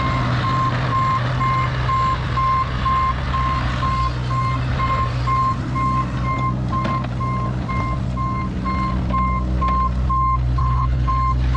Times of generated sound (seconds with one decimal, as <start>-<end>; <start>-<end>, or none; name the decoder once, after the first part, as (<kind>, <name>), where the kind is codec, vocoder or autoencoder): 10.6-11.1 (codec, HILCodec)

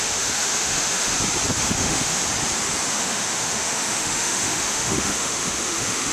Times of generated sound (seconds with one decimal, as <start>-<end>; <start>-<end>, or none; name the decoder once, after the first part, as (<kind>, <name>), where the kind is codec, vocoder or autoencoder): 0.0-1.1 (autoencoder, DAC-VAE); 1.6-2.2; 2.9-6.1

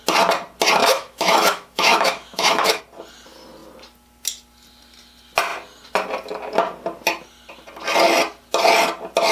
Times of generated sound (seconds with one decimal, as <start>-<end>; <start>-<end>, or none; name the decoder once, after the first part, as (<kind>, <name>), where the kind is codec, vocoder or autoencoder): 0.8-2.8 (autoencoder, DAC-VAE)

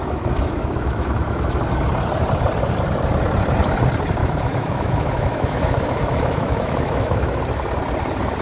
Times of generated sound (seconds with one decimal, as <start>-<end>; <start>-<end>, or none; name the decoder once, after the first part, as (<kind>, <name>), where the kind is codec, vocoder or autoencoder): 0.0-1.6 (autoencoder, DAC-VAE); 4.2-7.4

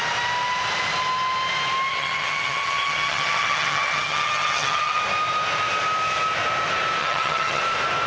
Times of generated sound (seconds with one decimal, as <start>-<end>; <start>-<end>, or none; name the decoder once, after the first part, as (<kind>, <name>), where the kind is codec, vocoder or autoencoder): 1.9-5.0 (vocoder, HiFi-GAN); 7.0-7.6

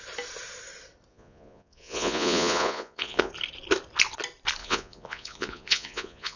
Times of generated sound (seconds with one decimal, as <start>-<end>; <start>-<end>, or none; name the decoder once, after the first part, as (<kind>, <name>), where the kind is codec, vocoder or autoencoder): 1.1-3.3 (vocoder, Vocos); 4.6-6.4

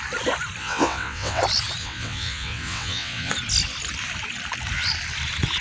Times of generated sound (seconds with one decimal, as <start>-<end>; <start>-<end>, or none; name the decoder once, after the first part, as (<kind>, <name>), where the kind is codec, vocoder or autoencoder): 0.6-1.4 (vocoder, WaveNeXt); 1.8-3.3